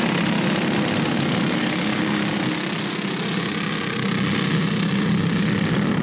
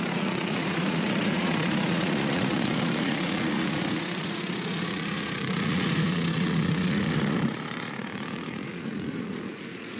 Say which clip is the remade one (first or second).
second